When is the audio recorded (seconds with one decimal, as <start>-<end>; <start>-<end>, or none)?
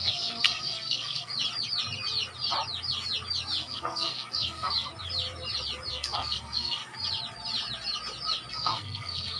1.3-3.6; 4.9-5.9; 6.8-8.5